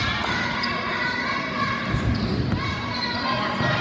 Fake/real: real